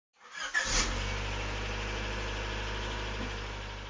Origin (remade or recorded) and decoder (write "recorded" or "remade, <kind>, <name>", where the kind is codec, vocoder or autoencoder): recorded